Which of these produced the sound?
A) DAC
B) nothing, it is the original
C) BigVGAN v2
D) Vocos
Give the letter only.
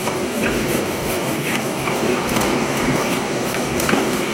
A